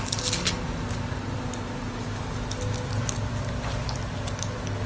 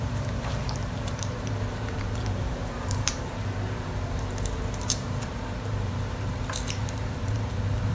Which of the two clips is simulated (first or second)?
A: second